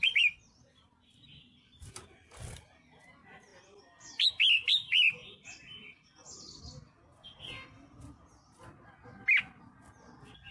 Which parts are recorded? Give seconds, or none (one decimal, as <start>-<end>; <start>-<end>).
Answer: 0.0-10.5